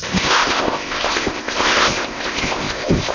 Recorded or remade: remade